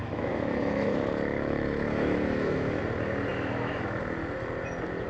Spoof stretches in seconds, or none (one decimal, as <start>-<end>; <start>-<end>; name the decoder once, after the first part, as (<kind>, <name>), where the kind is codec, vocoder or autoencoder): 0.0-2.8 (autoencoder, DAC-VAE); 3.3-4.0